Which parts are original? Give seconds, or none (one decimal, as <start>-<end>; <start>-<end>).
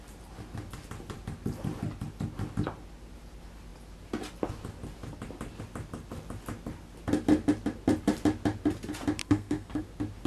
0.0-9.2; 9.8-10.3